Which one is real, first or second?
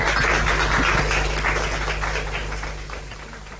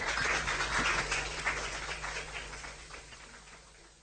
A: first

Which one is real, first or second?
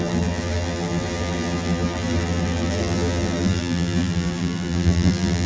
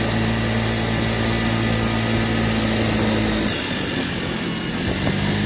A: second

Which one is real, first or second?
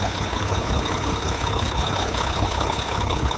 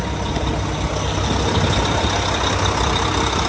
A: second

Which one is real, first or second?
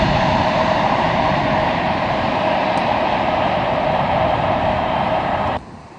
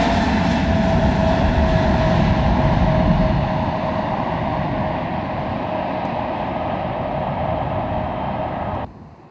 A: second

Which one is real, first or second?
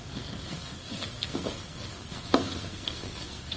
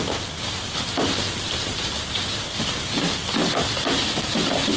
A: second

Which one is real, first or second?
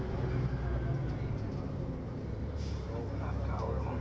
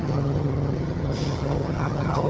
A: first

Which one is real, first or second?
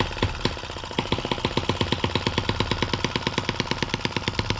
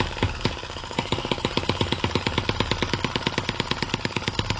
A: first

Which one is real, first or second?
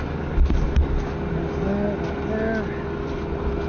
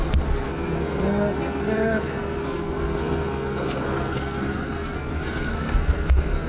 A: first